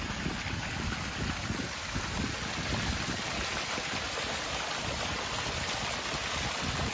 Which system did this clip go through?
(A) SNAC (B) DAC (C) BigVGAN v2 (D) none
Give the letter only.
D